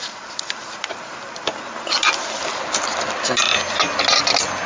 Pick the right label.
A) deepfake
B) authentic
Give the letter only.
B